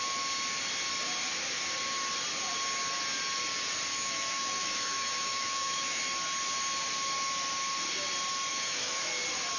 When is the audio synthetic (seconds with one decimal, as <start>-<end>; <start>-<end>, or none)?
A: 3.9-6.0; 8.5-9.1